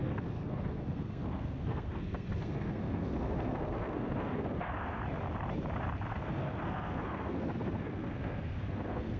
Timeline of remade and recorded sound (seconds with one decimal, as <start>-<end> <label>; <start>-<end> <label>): 0.0-5.0 remade; 5.0-6.1 recorded; 6.1-9.2 remade